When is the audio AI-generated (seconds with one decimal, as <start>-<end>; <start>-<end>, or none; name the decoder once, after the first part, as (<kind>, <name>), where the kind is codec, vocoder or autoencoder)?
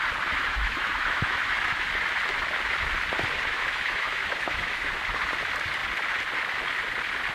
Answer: 0.5-1.9 (autoencoder, DAC-VAE); 3.5-4.9